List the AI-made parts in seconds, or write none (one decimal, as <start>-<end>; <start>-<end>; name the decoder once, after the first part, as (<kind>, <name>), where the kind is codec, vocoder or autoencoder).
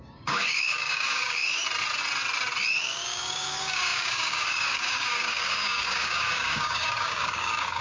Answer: 0.0-1.6 (codec, DAC); 2.8-7.8